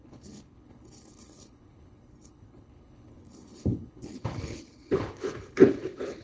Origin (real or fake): fake